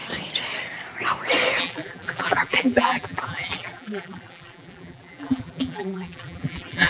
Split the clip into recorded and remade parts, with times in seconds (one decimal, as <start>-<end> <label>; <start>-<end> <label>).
0.0-1.6 recorded; 1.6-6.9 remade